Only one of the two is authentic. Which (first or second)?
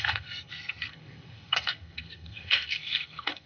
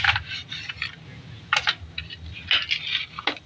second